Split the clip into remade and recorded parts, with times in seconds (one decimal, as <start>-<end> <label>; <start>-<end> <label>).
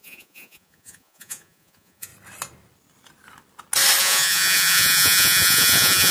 0.0-2.1 remade; 2.1-4.0 recorded; 4.0-6.1 remade